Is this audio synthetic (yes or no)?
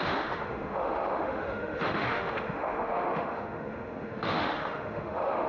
yes